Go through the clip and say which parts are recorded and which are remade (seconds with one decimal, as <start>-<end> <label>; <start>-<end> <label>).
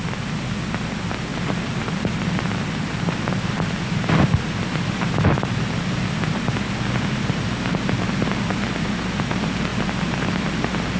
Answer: 0.0-1.3 recorded; 1.3-3.8 remade; 3.8-9.7 recorded; 9.7-10.3 remade; 10.3-11.0 recorded